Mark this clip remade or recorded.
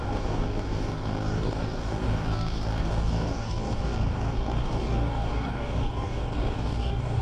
remade